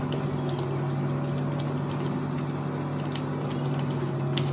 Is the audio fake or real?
real